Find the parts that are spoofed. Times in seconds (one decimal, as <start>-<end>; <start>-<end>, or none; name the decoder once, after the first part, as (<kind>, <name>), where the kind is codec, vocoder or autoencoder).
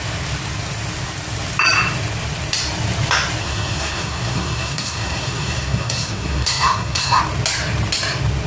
3.4-7.2 (codec, SNAC)